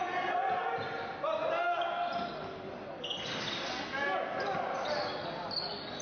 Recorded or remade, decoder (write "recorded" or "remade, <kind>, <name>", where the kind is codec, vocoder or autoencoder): recorded